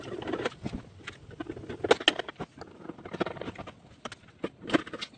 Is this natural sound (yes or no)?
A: yes